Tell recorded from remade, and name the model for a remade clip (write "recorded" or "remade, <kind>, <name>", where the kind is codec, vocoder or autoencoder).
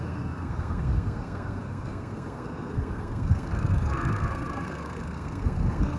remade, codec, SNAC